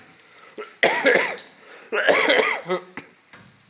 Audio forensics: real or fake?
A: real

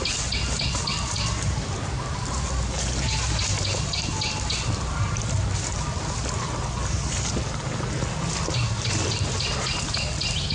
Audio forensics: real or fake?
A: real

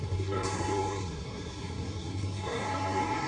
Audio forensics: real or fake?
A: fake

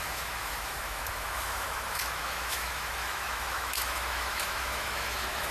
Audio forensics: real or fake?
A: fake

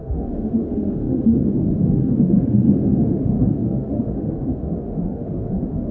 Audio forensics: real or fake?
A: fake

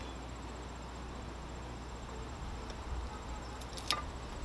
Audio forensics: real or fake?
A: real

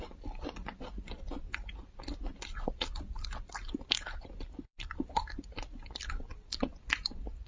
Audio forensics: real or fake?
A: real